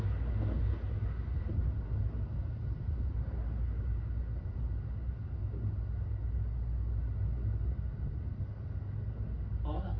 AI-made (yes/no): no